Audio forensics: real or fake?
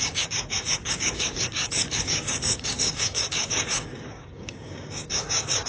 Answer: fake